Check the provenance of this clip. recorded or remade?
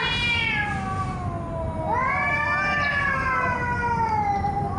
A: recorded